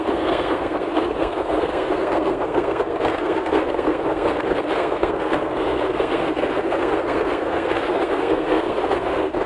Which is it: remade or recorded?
remade